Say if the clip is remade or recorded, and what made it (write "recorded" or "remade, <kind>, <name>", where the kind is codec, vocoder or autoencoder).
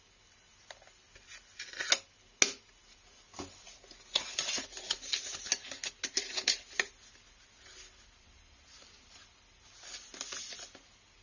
recorded